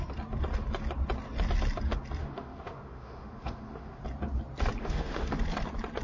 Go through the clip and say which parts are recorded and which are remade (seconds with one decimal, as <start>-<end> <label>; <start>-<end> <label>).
0.0-2.2 recorded; 2.2-4.0 remade; 4.0-4.8 recorded; 4.8-5.3 remade; 5.3-6.0 recorded

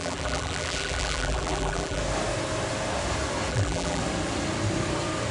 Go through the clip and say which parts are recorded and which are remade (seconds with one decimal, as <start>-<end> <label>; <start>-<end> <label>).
0.0-2.0 remade; 2.0-3.5 recorded; 3.5-4.0 remade; 4.0-5.3 recorded

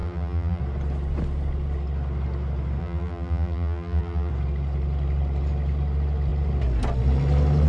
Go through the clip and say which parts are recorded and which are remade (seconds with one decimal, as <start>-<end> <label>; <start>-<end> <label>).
0.0-0.6 remade; 0.6-2.8 recorded; 2.8-4.3 remade; 4.3-7.7 recorded

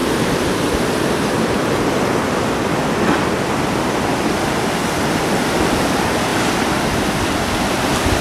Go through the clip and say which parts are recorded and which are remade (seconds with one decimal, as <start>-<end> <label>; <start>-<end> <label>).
0.0-2.5 remade; 2.5-8.2 recorded

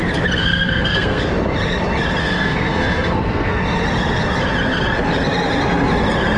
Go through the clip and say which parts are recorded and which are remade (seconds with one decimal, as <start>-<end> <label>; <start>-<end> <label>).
0.0-0.4 recorded; 0.4-1.2 remade; 1.2-2.2 recorded; 2.2-3.6 remade; 3.6-6.4 recorded

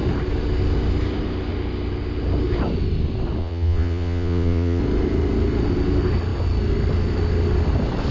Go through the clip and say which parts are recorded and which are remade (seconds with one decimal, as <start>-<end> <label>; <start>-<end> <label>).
0.0-3.4 recorded; 3.4-4.8 remade; 4.8-8.1 recorded

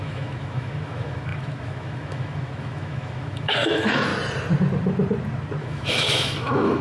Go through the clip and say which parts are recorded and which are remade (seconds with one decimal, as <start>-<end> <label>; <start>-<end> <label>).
0.0-4.1 remade; 4.1-5.6 recorded; 5.6-6.8 remade

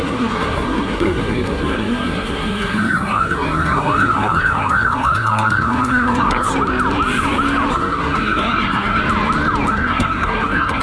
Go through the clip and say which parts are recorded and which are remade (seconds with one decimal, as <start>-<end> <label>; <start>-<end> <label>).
0.0-6.5 remade; 6.5-7.7 recorded; 7.7-9.0 remade; 9.0-9.7 recorded; 9.7-10.8 remade